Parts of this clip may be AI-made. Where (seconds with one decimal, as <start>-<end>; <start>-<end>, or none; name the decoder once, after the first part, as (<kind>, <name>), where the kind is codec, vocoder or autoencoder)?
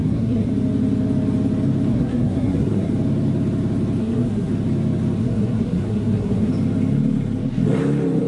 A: 0.0-0.5 (codec, SNAC); 1.9-2.9; 4.0-4.5; 5.2-6.5